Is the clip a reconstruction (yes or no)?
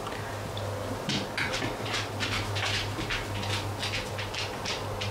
no